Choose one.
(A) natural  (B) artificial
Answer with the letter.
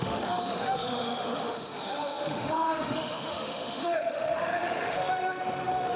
B